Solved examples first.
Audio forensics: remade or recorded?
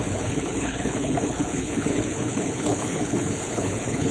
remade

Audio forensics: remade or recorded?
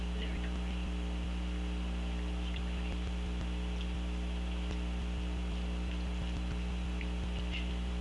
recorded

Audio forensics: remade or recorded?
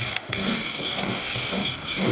remade